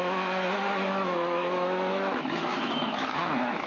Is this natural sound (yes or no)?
no